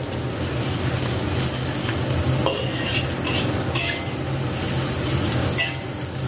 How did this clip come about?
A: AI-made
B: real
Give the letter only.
B